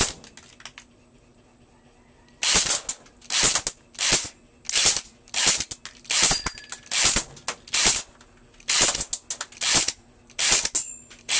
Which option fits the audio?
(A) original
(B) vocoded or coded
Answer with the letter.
A